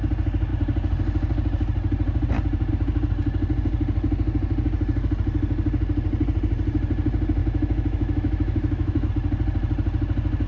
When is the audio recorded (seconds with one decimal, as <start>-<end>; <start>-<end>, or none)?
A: 0.0-7.4; 9.1-10.5